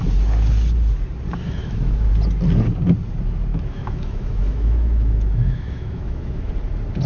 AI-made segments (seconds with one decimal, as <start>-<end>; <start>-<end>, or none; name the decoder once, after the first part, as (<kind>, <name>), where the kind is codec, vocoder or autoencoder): 1.6-2.1 (autoencoder, DAC-VAE); 3.5-6.5